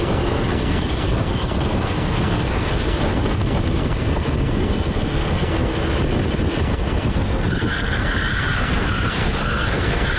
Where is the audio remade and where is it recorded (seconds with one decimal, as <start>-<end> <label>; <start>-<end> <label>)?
0.0-5.7 remade; 5.7-6.5 recorded; 6.5-10.2 remade